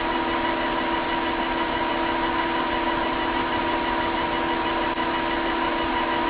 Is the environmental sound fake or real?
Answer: real